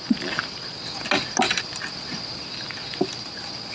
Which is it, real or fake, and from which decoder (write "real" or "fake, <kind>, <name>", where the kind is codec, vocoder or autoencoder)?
real